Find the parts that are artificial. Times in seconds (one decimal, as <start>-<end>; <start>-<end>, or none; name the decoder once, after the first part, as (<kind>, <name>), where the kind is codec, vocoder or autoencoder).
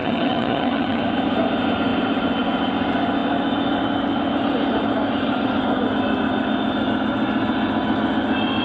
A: 0.0-1.0 (vocoder, HiFi-GAN)